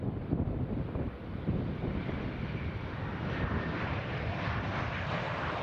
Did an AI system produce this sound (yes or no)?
no